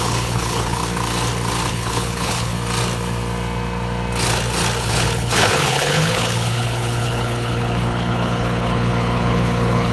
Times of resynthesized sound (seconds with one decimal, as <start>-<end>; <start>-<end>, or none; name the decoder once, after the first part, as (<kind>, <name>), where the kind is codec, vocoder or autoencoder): 0.0-0.8 (codec, HILCodec); 1.7-2.5; 4.8-9.9